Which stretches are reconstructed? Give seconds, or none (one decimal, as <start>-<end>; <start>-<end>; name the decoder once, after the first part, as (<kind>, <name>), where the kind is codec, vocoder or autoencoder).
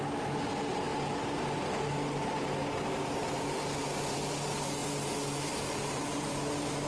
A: none